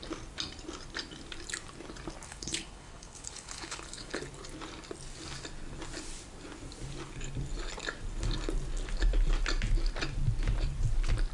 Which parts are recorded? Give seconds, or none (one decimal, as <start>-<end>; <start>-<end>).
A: 0.0-2.3; 4.2-11.3